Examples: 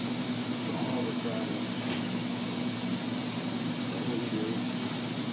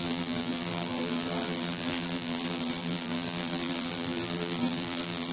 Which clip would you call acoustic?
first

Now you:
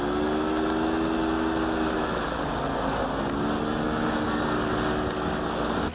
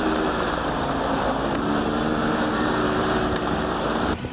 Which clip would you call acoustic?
first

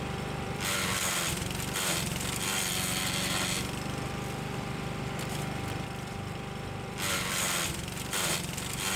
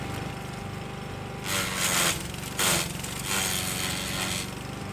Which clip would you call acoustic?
second